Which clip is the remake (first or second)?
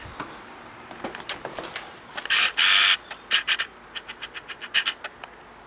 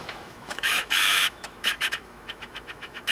second